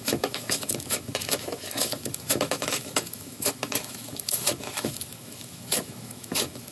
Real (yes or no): no